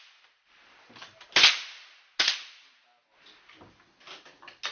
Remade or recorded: recorded